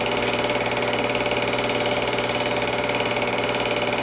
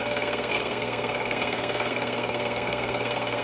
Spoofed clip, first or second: second